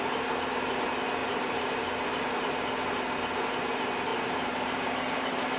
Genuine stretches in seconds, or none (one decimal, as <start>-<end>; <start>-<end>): 0.0-1.2; 2.5-4.1